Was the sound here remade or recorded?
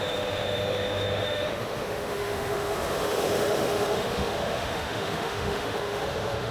remade